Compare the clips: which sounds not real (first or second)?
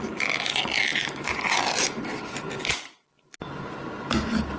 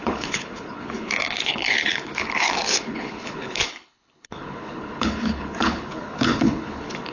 second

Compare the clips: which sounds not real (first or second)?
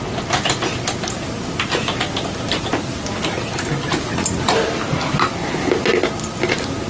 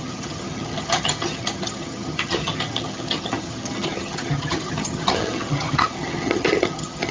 second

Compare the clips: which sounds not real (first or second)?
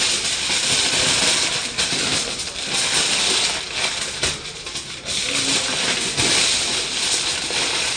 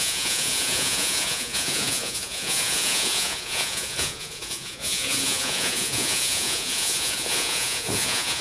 second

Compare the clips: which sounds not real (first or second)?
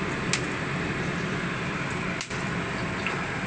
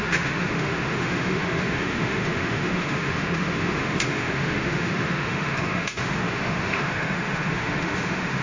second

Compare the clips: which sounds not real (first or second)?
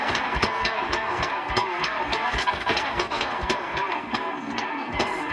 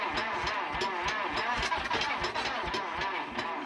first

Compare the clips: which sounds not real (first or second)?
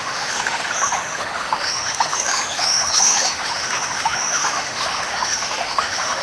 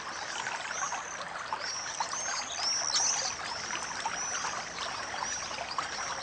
first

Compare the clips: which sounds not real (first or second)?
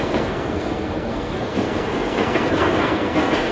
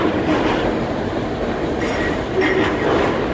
first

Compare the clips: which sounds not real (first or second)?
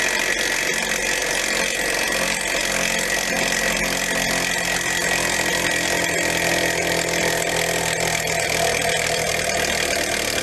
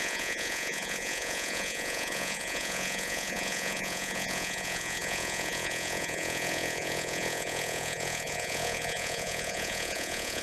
second